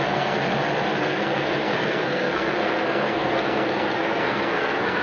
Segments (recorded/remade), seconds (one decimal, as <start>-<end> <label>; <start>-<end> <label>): 0.0-0.4 remade; 0.4-1.0 recorded; 1.0-5.0 remade